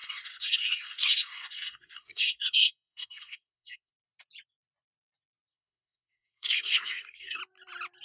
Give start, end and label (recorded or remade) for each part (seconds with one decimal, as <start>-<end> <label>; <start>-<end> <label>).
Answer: 0.0-3.9 remade; 3.9-5.5 recorded; 5.5-7.4 remade; 7.4-8.0 recorded